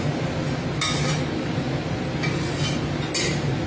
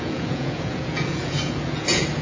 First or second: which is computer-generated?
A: second